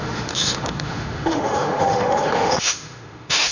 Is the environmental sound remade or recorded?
remade